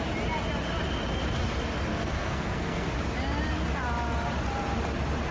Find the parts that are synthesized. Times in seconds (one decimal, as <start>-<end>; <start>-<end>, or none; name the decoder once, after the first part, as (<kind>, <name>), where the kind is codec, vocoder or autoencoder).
1.9-2.9 (codec, SNAC)